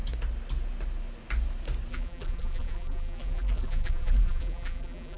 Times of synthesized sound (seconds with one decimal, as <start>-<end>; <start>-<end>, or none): 1.9-5.2